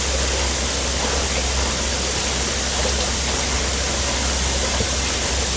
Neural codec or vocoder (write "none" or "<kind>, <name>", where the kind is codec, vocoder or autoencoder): none